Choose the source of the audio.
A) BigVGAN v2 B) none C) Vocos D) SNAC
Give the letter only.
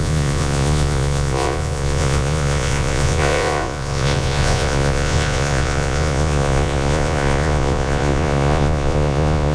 C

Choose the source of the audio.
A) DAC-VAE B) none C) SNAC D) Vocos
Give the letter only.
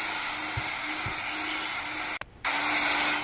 B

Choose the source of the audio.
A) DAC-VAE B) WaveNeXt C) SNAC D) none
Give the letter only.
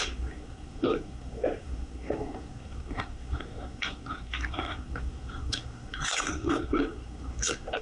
C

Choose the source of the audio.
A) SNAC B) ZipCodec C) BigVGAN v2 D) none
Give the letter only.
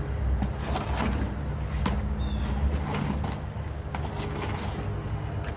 D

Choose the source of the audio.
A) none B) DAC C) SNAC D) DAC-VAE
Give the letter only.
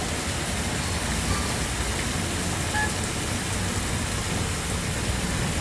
A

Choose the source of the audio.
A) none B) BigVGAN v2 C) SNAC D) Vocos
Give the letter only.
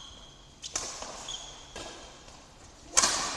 A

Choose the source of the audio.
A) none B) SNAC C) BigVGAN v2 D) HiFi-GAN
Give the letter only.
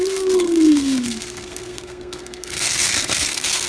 B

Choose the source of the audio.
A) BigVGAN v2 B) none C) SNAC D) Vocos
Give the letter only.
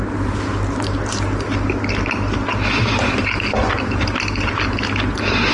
B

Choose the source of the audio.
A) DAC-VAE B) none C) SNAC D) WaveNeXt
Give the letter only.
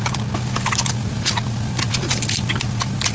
B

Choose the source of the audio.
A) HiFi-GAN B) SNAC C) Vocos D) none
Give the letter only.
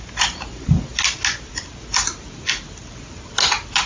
D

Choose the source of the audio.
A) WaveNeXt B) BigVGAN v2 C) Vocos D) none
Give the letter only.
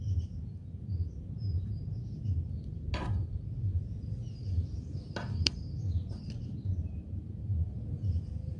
B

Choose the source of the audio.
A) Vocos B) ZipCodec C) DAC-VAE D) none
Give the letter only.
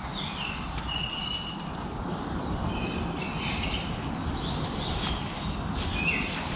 D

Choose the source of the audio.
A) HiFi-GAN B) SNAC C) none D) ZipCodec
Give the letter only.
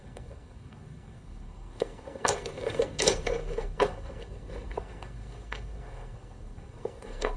B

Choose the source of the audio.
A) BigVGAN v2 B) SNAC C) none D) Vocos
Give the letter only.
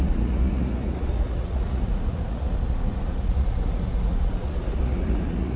D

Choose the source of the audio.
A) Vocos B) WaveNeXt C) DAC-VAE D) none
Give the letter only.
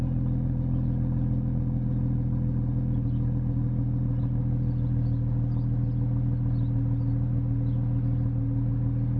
D